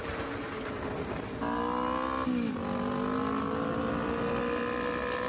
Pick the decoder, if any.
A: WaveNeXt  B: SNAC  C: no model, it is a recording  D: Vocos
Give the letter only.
C